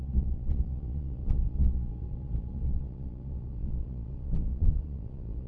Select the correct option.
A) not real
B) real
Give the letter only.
A